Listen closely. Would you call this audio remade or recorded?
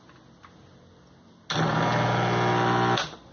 recorded